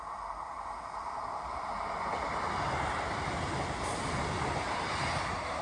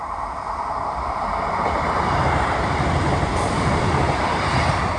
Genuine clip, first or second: first